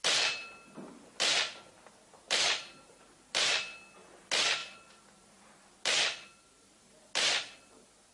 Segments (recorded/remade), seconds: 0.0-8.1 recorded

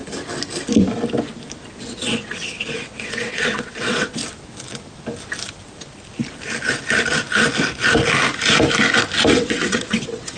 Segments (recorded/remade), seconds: 0.0-1.8 recorded; 1.8-4.2 remade; 4.2-9.3 recorded; 9.3-10.4 remade

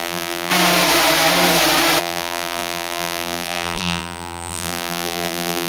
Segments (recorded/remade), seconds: 0.0-0.5 remade; 0.5-2.0 recorded; 2.0-5.7 remade